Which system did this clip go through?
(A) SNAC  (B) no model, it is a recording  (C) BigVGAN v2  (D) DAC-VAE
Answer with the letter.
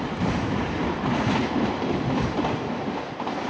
C